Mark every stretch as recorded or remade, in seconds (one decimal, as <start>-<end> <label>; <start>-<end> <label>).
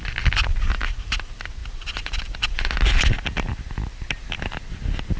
0.0-5.2 recorded